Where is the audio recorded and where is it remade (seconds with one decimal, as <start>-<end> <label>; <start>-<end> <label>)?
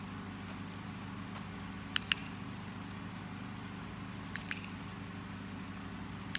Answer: 0.0-6.4 recorded